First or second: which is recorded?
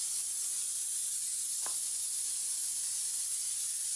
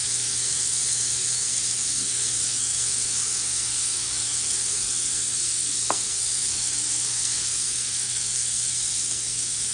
first